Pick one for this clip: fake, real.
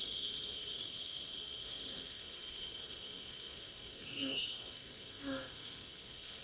fake